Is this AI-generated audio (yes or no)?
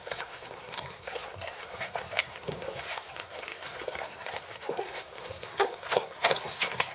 yes